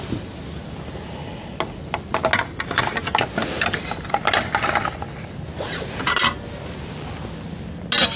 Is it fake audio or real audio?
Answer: real